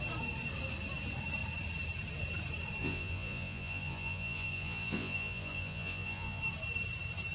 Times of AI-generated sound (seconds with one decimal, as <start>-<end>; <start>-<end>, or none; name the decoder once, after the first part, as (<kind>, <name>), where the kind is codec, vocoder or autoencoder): 2.8-6.4 (vocoder, Vocos)